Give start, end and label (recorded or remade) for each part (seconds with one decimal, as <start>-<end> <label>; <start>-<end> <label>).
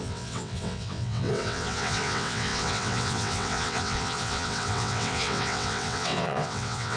0.0-7.0 remade